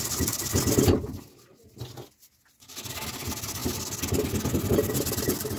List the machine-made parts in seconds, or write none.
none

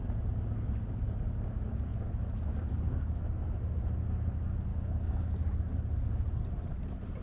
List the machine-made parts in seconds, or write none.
4.7-5.3 (codec, DAC)